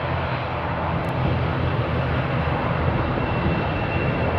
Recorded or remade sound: recorded